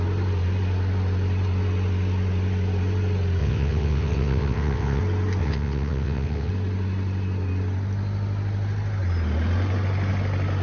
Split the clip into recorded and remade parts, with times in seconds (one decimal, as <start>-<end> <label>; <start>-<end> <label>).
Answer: 0.0-3.4 recorded; 3.4-5.0 remade; 5.0-5.4 recorded; 5.4-6.5 remade; 6.5-10.6 recorded

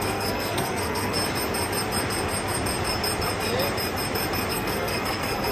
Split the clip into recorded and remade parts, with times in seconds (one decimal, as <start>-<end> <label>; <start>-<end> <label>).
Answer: 0.0-1.2 remade; 1.2-4.5 recorded; 4.5-5.5 remade

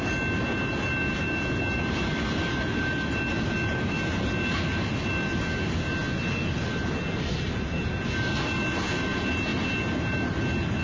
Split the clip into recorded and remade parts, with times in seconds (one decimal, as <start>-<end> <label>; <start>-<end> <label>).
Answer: 0.0-10.8 recorded

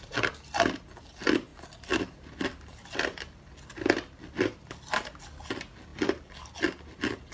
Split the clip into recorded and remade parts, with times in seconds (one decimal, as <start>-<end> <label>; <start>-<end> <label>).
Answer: 0.0-7.3 recorded

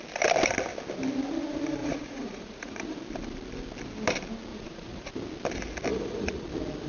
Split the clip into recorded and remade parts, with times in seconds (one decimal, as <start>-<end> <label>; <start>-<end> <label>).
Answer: 0.0-1.8 recorded; 1.8-3.0 remade; 3.0-4.5 recorded; 4.5-5.1 remade; 5.1-5.9 recorded; 5.9-6.5 remade; 6.5-6.9 recorded

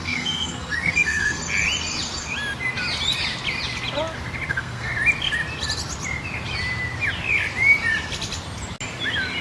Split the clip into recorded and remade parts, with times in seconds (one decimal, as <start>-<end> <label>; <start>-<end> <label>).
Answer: 0.0-1.4 remade; 1.4-4.5 recorded; 4.5-4.9 remade; 4.9-9.4 recorded